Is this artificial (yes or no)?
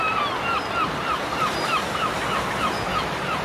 no